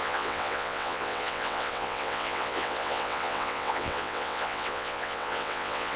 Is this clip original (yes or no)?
no